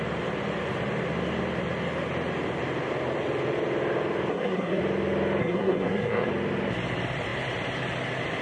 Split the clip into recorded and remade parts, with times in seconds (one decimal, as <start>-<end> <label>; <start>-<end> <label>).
0.0-4.3 recorded; 4.3-4.8 remade; 4.8-5.4 recorded; 5.4-6.3 remade; 6.3-8.4 recorded